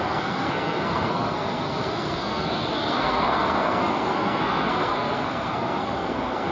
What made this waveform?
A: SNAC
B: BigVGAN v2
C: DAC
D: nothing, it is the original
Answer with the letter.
A